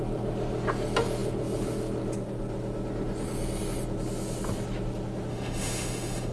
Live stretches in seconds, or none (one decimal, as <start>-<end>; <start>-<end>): 0.0-5.3